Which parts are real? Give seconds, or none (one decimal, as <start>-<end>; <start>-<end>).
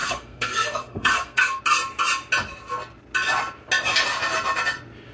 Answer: 1.6-5.1